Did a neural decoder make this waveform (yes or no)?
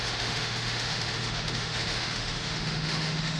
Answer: yes